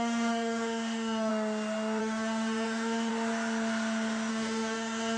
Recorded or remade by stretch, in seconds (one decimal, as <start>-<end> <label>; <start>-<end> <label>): 0.0-1.3 remade; 1.3-2.0 recorded; 2.0-3.1 remade; 3.1-4.3 recorded; 4.3-5.2 remade